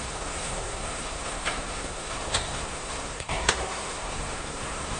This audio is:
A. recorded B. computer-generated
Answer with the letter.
B